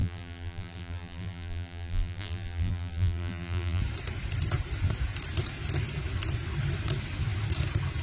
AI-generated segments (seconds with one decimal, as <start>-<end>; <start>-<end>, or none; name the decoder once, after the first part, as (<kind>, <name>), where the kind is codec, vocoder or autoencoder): 0.0-3.8 (vocoder, BigVGAN v2)